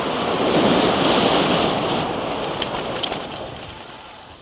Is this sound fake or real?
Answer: real